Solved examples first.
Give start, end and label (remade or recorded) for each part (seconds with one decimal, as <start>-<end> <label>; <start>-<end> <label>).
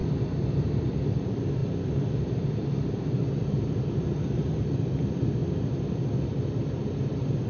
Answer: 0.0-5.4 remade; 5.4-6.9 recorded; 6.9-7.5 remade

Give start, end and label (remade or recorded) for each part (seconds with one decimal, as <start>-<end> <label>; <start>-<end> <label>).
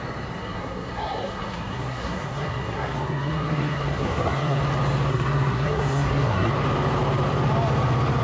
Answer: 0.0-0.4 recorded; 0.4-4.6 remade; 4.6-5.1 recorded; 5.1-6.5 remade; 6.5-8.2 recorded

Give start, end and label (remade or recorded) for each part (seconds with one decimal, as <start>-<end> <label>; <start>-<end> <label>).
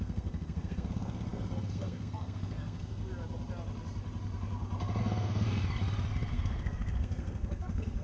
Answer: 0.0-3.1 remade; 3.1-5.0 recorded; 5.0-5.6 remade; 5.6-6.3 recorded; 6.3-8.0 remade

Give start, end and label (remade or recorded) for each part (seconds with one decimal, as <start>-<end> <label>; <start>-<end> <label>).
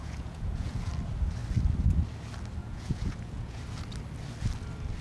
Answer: 0.0-0.9 remade; 0.9-2.6 recorded; 2.6-3.6 remade; 3.6-5.0 recorded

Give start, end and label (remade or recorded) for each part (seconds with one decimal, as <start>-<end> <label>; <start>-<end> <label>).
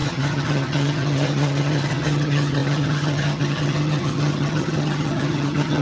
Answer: 0.0-5.8 remade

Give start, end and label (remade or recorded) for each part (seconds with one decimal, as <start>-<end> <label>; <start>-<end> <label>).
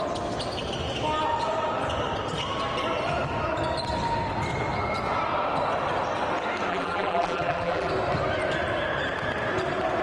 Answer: 0.0-6.7 recorded; 6.7-7.9 remade; 7.9-10.0 recorded